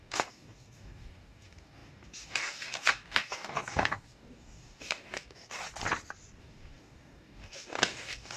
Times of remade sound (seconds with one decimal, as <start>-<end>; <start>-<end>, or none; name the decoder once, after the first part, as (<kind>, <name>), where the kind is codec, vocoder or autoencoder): 0.0-5.6 (codec, DAC); 6.4-8.4